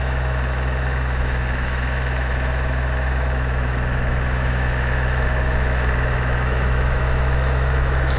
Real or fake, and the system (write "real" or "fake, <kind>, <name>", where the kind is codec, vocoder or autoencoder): fake, autoencoder, DAC-VAE